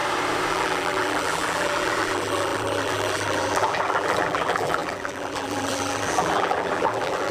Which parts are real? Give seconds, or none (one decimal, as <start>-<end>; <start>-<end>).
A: 0.0-0.5